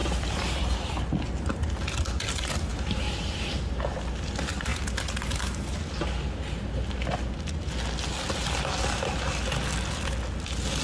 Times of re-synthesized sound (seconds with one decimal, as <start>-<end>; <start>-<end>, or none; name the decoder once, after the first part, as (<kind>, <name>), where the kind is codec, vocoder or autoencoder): 0.0-0.9 (vocoder, BigVGAN v2); 2.7-3.5